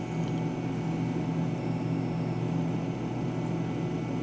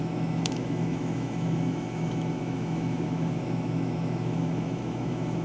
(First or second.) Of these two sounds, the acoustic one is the first